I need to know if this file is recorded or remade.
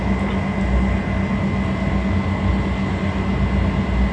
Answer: recorded